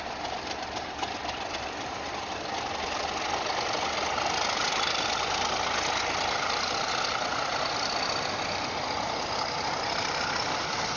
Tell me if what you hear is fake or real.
real